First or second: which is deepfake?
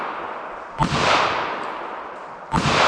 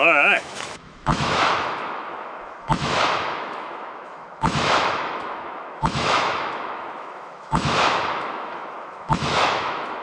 second